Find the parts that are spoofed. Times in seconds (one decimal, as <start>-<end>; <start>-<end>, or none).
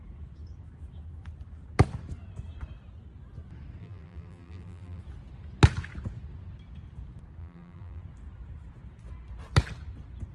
3.8-5.0; 7.4-8.0